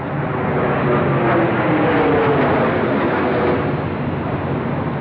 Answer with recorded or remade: recorded